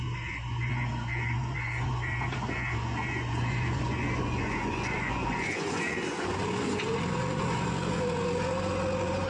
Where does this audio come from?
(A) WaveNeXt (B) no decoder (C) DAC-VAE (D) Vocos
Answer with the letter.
D